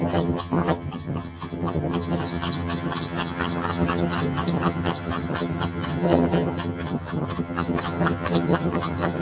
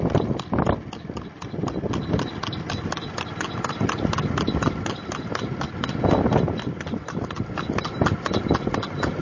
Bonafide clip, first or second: second